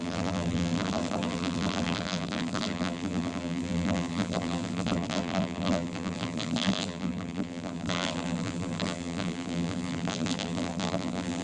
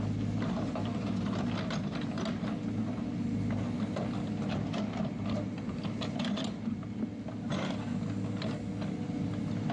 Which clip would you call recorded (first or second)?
second